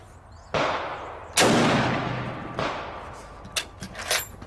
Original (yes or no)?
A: yes